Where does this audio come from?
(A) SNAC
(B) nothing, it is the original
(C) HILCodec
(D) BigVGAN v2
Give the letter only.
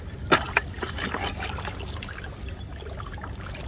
D